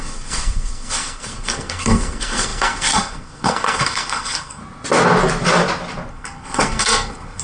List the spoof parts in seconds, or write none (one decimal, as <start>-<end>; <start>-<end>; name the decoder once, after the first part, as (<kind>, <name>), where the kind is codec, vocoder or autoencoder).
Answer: 0.0-4.6 (codec, SNAC); 6.1-7.4